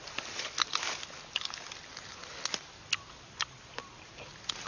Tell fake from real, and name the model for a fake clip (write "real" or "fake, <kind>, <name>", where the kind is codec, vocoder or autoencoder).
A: real